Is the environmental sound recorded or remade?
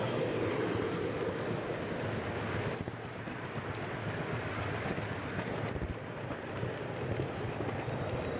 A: recorded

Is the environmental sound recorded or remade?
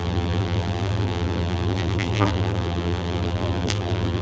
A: remade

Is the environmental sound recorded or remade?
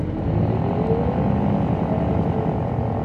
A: recorded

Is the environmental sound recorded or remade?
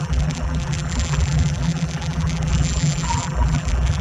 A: remade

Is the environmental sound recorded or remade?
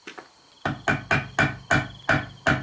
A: recorded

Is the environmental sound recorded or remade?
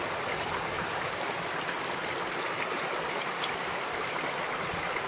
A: recorded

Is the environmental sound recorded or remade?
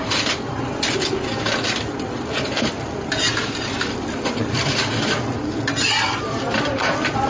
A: remade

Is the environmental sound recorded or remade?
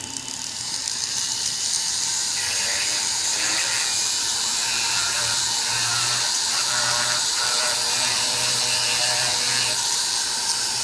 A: remade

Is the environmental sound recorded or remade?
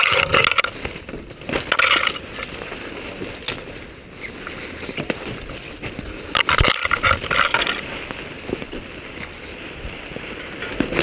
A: recorded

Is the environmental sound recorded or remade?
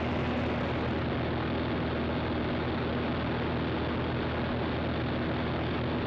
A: recorded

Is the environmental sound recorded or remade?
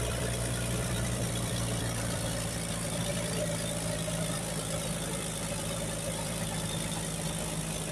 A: remade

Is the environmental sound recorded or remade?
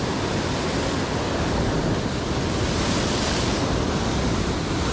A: recorded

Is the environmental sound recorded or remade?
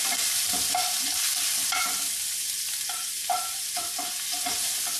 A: recorded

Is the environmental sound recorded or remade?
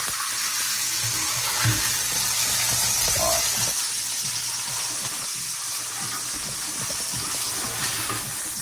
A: recorded